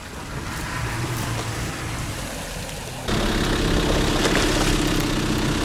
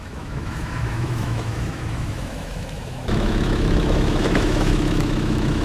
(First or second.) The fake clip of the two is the second